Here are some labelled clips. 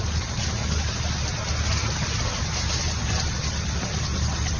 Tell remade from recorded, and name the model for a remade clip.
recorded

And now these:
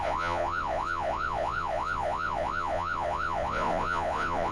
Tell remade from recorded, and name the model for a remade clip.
remade, vocoder, Vocos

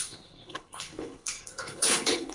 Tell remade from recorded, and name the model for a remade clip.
remade, codec, HILCodec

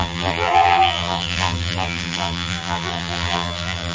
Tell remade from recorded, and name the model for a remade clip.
remade, vocoder, BigVGAN v2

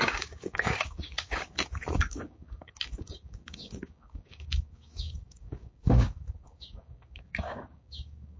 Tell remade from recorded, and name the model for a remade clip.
remade, codec, DAC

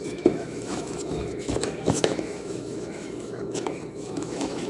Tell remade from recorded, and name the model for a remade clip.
remade, autoencoder, DAC-VAE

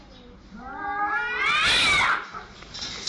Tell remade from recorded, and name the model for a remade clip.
recorded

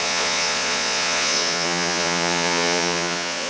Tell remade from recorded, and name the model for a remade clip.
remade, vocoder, Vocos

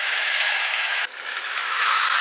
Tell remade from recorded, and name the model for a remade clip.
remade, autoencoder, DAC-VAE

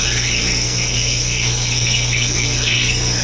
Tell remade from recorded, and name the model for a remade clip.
remade, codec, SNAC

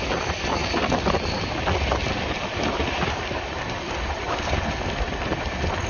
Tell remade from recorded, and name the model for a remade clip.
recorded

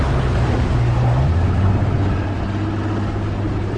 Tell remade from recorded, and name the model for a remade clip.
recorded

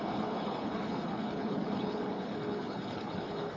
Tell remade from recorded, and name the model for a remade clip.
remade, codec, HILCodec